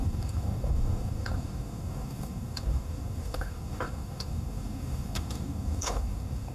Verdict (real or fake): fake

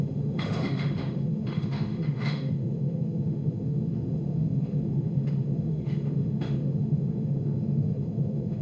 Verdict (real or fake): fake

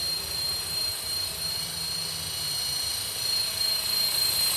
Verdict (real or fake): real